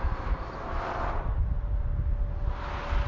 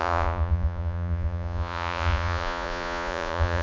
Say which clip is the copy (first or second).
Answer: second